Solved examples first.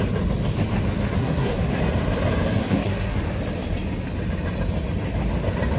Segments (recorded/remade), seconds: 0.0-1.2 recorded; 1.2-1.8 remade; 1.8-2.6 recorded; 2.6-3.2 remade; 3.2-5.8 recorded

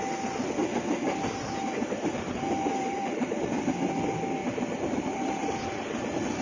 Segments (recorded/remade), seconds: 0.0-0.6 recorded; 0.6-3.8 remade; 3.8-4.4 recorded; 4.4-5.6 remade; 5.6-6.4 recorded

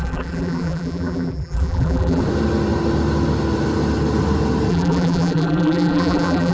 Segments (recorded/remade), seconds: 0.0-2.2 remade; 2.2-4.7 recorded; 4.7-6.5 remade

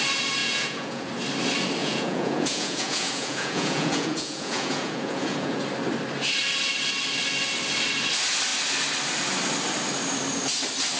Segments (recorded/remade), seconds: 0.0-0.4 recorded; 0.4-1.1 remade; 1.1-1.8 recorded; 1.8-5.6 remade; 5.6-11.0 recorded

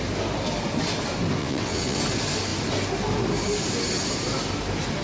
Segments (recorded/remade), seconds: 0.0-1.4 recorded; 1.4-2.0 remade; 2.0-5.0 recorded

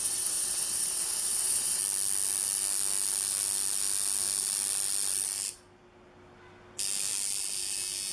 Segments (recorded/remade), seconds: 0.0-1.8 remade; 1.8-8.1 recorded

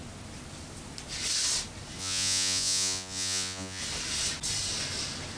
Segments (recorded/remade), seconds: 0.0-2.0 recorded; 2.0-3.8 remade; 3.8-5.4 recorded